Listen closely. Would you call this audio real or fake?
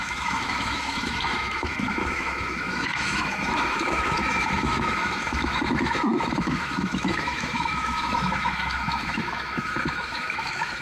fake